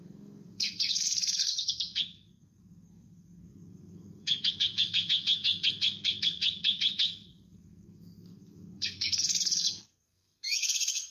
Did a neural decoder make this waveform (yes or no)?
yes